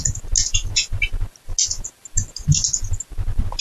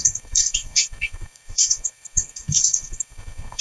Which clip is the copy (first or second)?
second